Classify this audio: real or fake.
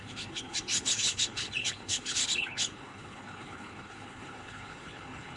fake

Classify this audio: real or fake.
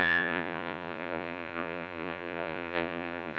fake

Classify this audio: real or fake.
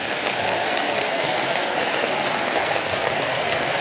fake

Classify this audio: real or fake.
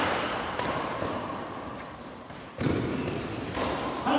fake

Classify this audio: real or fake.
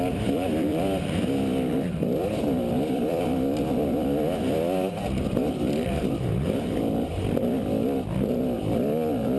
fake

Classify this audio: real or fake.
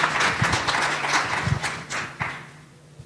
fake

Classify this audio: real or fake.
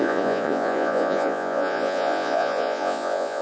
fake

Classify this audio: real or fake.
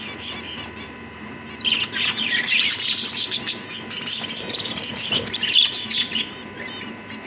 fake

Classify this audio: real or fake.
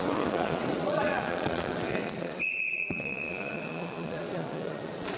fake